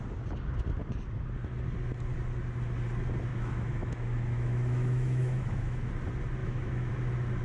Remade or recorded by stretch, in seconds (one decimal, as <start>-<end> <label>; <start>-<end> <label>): 0.0-3.3 recorded; 3.3-5.9 remade; 5.9-6.4 recorded; 6.4-6.9 remade; 6.9-7.4 recorded